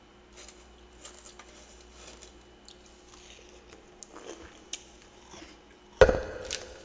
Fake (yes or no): no